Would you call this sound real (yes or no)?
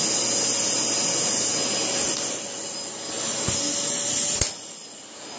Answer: yes